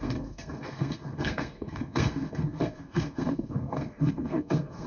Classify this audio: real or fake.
fake